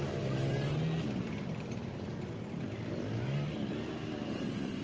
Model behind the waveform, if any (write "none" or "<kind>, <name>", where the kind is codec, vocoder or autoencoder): none